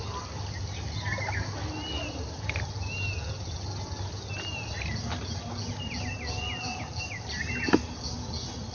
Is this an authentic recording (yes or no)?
yes